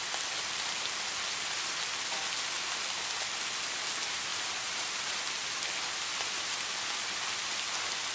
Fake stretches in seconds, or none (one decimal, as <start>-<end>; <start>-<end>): 4.3-5.3